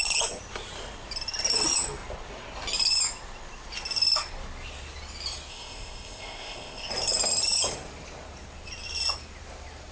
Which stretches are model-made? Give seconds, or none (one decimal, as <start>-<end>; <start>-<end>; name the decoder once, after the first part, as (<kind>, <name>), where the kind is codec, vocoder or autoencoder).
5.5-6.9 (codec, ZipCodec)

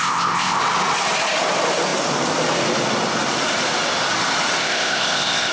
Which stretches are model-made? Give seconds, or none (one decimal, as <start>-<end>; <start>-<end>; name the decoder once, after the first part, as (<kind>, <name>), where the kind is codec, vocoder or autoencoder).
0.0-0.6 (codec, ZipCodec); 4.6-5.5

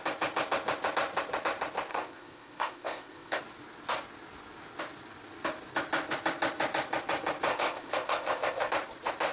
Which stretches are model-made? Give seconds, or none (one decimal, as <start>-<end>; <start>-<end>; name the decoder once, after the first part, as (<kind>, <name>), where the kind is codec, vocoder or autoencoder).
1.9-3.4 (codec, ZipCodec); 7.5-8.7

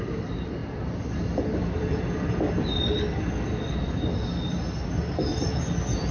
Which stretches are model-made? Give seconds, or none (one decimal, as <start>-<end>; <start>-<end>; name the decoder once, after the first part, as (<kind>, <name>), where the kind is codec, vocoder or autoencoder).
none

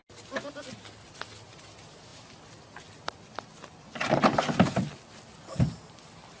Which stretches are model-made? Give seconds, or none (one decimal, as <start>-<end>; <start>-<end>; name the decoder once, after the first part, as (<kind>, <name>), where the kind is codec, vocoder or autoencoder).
none